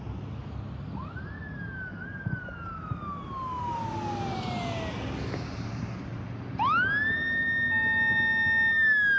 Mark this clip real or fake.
real